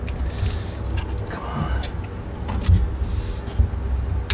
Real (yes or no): yes